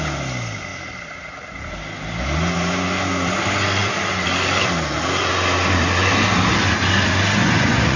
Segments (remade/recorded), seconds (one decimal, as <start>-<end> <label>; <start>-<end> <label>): 0.0-7.4 recorded; 7.4-8.0 remade